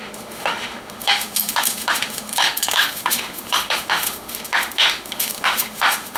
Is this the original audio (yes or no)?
no